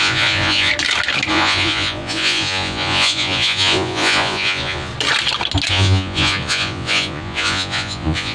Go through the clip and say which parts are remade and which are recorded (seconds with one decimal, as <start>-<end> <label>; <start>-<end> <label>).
0.0-0.7 remade; 0.7-1.3 recorded; 1.3-4.9 remade; 4.9-5.7 recorded; 5.7-8.3 remade